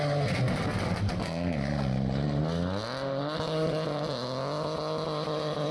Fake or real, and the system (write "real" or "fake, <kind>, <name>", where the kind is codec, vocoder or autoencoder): real